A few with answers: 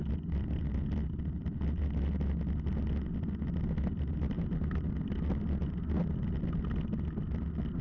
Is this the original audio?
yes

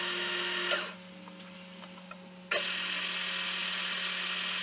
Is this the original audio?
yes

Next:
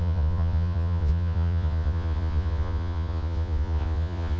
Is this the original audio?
no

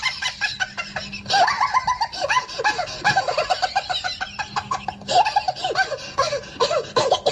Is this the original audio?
yes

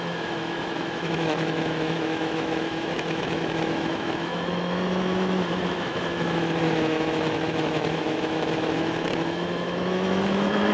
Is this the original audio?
no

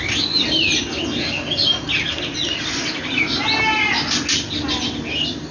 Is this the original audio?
yes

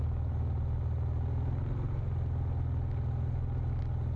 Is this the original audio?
yes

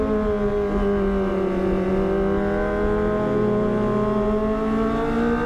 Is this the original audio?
yes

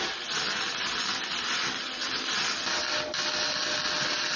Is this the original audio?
yes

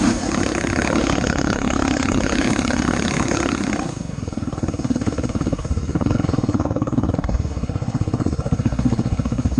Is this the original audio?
no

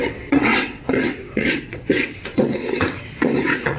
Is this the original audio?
no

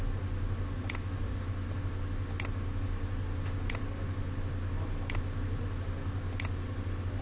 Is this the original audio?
yes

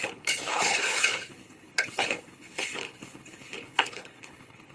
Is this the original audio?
no